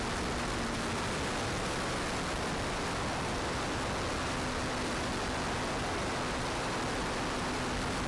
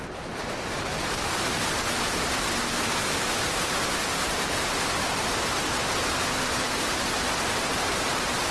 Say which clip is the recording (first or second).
first